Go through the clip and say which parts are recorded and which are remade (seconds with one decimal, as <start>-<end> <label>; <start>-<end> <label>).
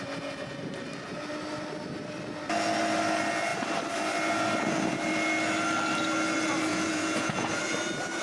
0.0-6.7 recorded; 6.7-7.6 remade; 7.6-8.2 recorded